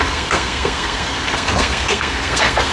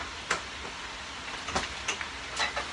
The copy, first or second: first